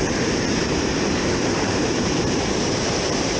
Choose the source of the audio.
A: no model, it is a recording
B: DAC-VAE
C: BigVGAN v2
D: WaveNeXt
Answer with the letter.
C